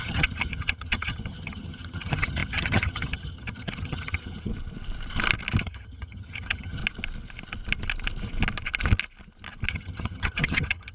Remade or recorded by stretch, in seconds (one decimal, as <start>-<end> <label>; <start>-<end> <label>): 0.0-4.5 remade; 4.5-5.6 recorded; 5.6-6.8 remade; 6.8-9.7 recorded; 9.7-10.9 remade